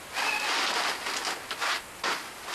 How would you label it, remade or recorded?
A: recorded